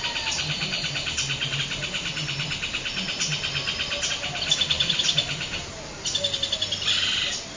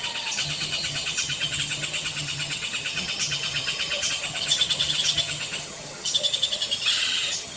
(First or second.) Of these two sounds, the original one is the first